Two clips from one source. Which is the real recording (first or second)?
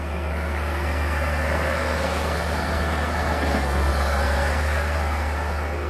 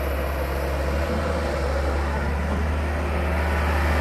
second